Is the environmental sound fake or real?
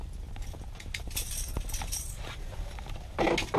real